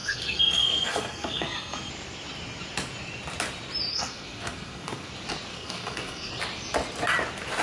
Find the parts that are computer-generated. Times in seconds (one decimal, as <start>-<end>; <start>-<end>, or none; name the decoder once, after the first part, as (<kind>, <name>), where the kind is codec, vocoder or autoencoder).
0.0-1.9 (codec, SNAC); 3.9-5.1; 5.5-6.3